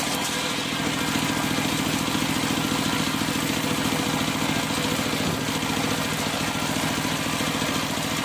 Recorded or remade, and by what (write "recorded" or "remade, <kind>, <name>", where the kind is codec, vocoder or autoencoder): recorded